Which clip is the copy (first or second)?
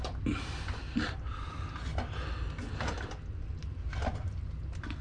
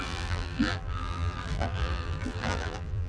second